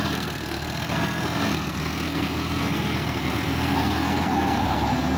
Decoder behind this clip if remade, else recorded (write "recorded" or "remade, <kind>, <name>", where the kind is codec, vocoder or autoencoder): remade, codec, SNAC